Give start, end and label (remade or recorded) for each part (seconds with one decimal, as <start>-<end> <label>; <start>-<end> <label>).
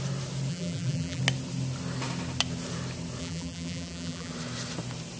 0.0-0.5 recorded; 0.5-1.2 remade; 1.2-3.2 recorded; 3.2-4.3 remade; 4.3-5.2 recorded